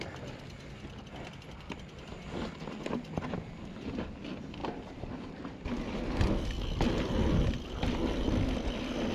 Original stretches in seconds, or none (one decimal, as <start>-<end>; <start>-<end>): 0.0-9.1